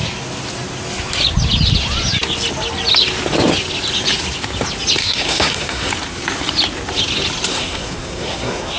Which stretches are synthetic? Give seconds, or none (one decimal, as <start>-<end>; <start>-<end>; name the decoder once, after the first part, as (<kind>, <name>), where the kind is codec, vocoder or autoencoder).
5.0-5.9 (codec, SNAC); 7.5-8.8